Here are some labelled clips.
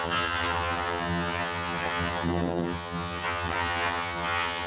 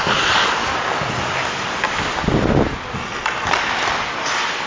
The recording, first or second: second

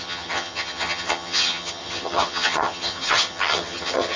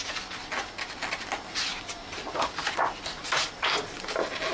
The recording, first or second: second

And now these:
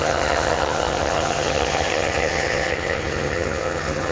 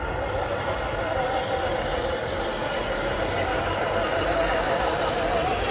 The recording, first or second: second